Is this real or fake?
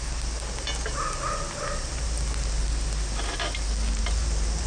real